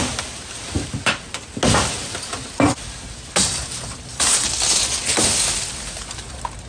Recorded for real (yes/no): yes